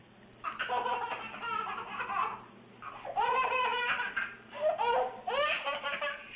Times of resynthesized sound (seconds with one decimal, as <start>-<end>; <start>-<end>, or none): none